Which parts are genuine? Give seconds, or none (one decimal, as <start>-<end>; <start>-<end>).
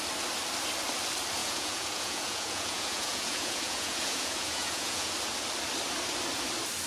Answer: 0.0-1.4; 5.1-6.9